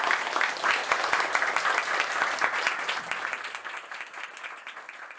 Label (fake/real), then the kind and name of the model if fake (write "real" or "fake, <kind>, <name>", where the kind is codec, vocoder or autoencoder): real